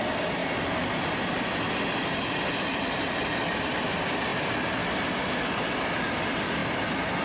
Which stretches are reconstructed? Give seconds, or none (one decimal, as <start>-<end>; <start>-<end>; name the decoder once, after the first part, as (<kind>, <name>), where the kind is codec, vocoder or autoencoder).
none